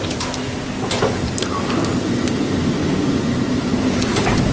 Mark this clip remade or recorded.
recorded